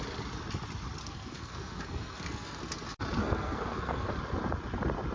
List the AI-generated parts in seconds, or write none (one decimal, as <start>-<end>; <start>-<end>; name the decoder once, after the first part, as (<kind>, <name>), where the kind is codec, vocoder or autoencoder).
1.0-2.6 (codec, SNAC); 3.2-4.1